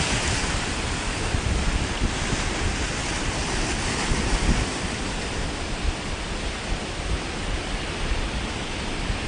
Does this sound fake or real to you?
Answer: real